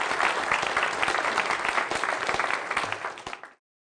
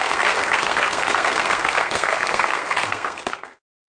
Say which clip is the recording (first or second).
first